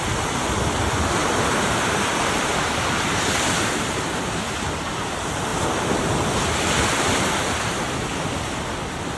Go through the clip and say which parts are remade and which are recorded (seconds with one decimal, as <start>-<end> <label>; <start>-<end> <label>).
0.0-1.2 recorded; 1.2-4.9 remade; 4.9-9.2 recorded